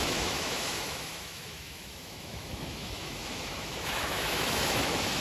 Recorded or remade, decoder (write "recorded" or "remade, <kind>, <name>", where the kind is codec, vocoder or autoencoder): remade, autoencoder, DAC-VAE